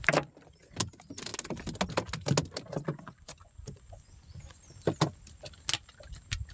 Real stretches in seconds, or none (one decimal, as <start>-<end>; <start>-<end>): 0.0-2.9; 4.6-6.5

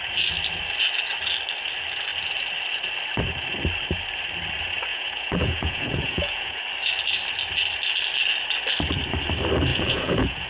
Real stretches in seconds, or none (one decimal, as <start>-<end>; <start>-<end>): 0.0-4.9; 6.6-9.7

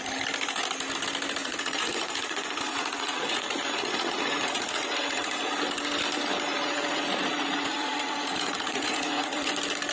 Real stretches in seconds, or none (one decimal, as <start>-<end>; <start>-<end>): 0.0-1.4; 5.5-6.5; 9.5-9.9

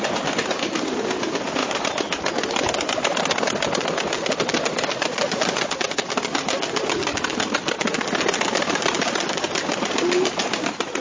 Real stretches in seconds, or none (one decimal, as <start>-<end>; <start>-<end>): 0.0-11.0

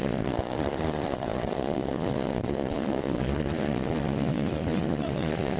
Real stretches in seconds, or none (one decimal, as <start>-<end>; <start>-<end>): none